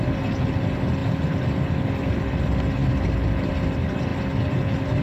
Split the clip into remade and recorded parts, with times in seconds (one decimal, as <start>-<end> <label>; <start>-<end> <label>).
0.0-1.0 recorded; 1.0-2.1 remade; 2.1-2.8 recorded; 2.8-3.5 remade; 3.5-5.0 recorded